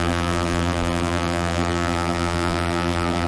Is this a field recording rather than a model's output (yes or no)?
no